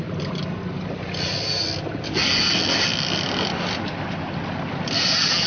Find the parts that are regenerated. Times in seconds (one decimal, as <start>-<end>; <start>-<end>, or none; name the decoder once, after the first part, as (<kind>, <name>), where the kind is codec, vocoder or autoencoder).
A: 2.2-5.5 (vocoder, BigVGAN v2)